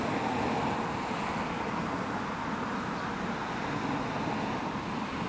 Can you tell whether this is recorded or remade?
recorded